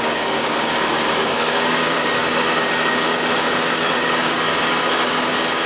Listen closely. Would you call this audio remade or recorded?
remade